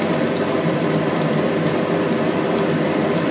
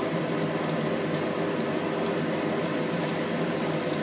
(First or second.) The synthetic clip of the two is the first